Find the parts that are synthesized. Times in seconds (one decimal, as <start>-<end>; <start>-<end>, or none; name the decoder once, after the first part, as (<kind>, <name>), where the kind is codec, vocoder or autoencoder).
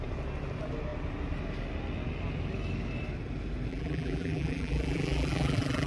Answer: 3.7-5.9 (vocoder, BigVGAN v2)